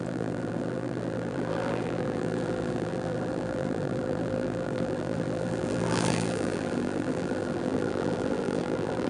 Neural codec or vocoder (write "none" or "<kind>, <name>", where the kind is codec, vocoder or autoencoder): vocoder, BigVGAN v2